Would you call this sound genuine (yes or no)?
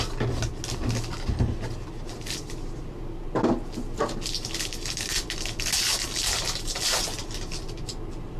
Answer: yes